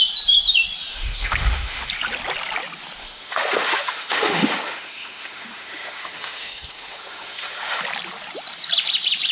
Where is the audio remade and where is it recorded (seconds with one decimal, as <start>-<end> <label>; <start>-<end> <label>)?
0.0-0.9 recorded; 0.9-1.9 remade; 1.9-3.0 recorded; 3.0-7.8 remade; 7.8-9.3 recorded